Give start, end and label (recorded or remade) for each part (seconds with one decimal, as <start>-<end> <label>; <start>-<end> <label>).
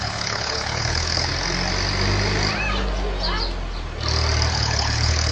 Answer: 0.0-1.3 remade; 1.3-4.5 recorded; 4.5-5.3 remade